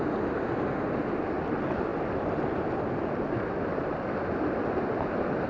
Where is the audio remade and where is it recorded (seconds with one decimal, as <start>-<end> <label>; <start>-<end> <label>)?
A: 0.0-5.5 recorded

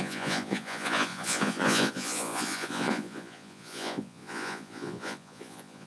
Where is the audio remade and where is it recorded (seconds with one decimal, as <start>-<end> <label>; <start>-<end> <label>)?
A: 0.0-5.9 remade